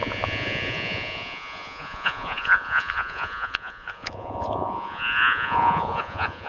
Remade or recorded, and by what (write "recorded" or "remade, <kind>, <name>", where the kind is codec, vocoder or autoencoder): remade, vocoder, Vocos